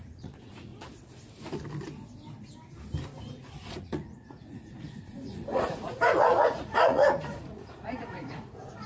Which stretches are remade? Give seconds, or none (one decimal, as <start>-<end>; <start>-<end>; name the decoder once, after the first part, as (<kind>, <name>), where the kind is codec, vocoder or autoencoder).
0.0-0.7 (vocoder, Vocos); 3.3-8.9